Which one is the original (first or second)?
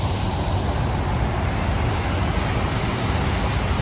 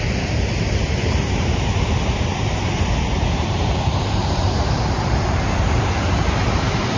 first